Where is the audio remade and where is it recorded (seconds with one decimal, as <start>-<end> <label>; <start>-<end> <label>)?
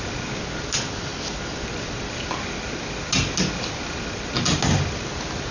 0.0-5.5 recorded